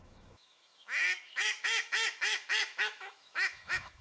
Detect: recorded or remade remade